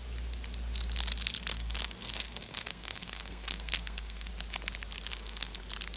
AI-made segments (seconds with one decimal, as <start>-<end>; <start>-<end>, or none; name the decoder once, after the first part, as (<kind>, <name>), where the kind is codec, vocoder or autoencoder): 1.5-4.3 (codec, SNAC); 5.1-5.6